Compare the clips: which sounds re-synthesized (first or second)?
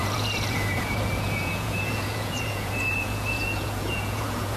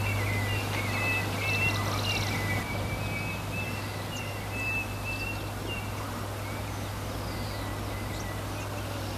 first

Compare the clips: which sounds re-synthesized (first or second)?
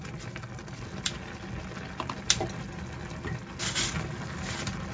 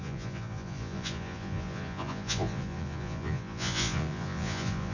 second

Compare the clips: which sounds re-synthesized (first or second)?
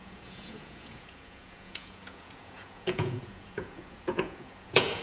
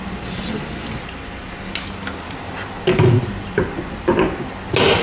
first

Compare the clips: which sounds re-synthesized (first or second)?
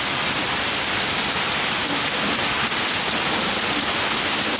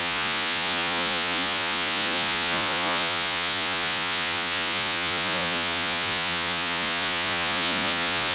second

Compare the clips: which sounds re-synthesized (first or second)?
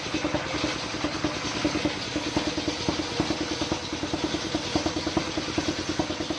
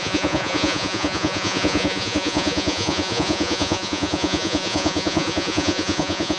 second